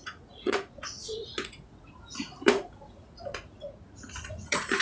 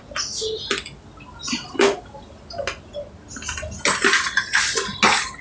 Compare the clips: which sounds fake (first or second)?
first